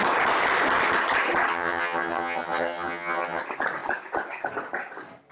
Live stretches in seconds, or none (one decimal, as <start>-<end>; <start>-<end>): 0.0-1.5; 3.4-5.3